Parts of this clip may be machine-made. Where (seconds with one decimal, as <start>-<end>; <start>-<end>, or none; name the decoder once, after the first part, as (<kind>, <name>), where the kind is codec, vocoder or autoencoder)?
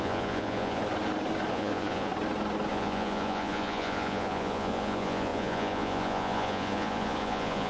0.0-0.8 (vocoder, Vocos); 1.5-2.1; 2.7-7.7